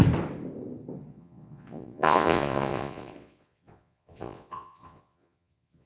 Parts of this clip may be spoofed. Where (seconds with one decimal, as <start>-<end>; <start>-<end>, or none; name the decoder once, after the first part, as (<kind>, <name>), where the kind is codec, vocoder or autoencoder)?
1.1-5.9 (vocoder, Vocos)